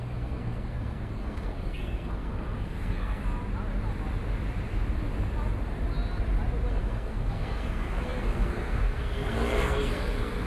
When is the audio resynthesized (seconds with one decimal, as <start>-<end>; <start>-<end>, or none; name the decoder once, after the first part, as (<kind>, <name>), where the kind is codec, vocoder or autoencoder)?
0.0-3.2 (codec, SNAC); 6.7-10.5